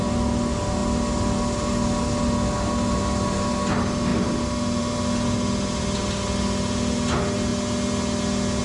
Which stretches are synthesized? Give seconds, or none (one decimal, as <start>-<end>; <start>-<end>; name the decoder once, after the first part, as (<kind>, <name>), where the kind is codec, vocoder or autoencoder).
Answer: none